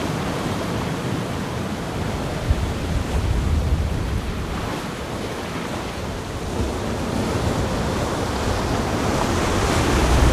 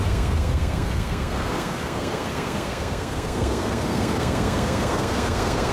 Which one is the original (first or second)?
first